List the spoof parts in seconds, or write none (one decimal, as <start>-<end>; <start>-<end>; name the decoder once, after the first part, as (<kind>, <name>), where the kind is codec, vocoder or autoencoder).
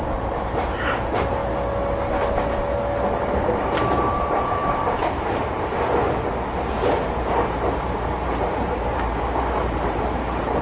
0.0-1.4 (vocoder, BigVGAN v2); 4.1-4.6; 5.1-6.0; 6.5-10.6